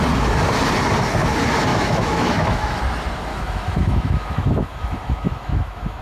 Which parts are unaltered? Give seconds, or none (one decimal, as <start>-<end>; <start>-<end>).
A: 0.0-1.7; 2.8-3.3